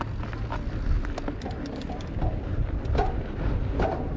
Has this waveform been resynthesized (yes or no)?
no